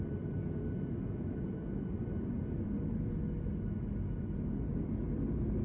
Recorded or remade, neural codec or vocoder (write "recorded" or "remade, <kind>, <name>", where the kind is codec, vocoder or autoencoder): recorded